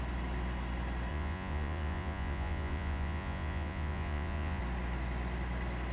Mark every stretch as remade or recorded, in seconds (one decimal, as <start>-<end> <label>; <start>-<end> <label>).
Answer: 0.0-1.1 recorded; 1.1-4.6 remade; 4.6-5.9 recorded